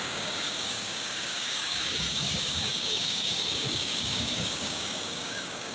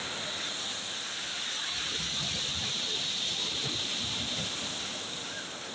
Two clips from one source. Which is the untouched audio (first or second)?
second